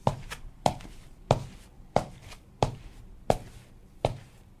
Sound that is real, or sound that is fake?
real